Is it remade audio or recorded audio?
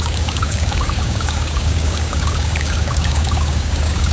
remade